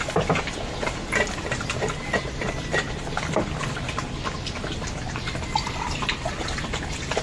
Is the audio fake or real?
real